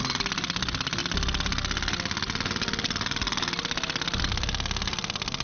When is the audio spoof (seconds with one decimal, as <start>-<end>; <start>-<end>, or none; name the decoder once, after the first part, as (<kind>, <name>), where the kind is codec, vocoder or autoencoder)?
none